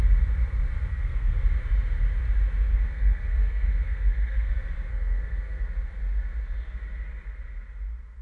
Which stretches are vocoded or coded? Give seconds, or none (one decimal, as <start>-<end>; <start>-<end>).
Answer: 0.9-1.4; 2.7-4.5; 4.9-5.7